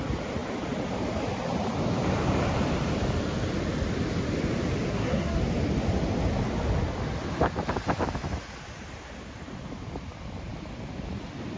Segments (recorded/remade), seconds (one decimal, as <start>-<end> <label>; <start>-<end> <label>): 0.0-4.9 recorded; 4.9-5.4 remade; 5.4-11.6 recorded